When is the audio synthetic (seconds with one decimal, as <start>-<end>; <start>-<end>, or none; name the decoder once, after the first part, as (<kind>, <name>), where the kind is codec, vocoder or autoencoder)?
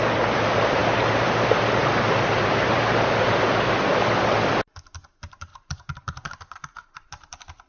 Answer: 0.8-3.4 (vocoder, BigVGAN v2); 5.5-7.7